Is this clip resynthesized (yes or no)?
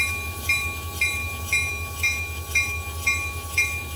yes